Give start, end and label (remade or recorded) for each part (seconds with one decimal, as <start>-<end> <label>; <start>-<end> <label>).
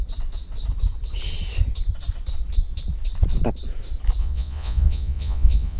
0.0-4.2 recorded; 4.2-5.8 remade